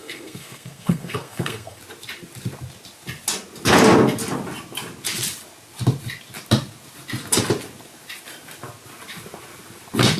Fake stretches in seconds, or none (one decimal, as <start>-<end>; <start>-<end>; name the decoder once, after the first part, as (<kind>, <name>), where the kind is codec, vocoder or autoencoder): 0.0-1.8 (codec, SNAC)